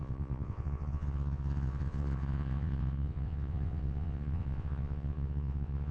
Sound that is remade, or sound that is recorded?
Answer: remade